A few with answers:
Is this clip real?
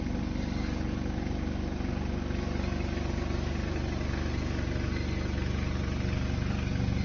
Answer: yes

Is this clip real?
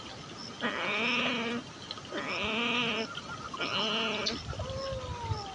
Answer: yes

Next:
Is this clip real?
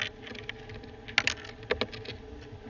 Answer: yes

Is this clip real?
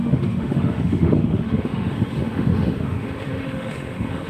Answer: no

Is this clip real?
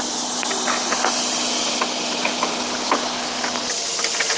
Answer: yes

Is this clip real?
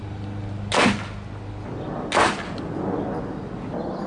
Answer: yes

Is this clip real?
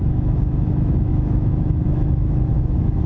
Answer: no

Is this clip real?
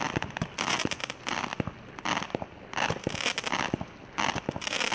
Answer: yes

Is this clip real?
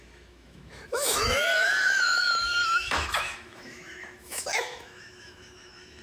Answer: no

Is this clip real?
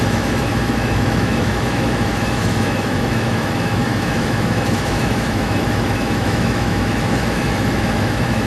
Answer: no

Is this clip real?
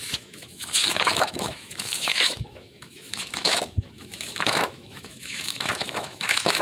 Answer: no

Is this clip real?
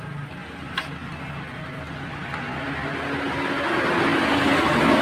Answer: yes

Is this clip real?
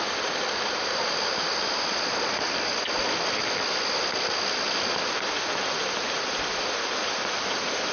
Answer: yes